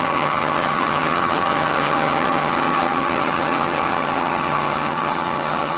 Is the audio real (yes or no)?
no